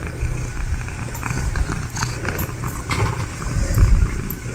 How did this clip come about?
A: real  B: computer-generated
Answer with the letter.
A